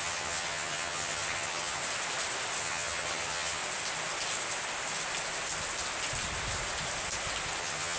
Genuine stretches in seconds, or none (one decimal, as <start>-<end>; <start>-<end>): 1.8-2.6; 3.6-7.6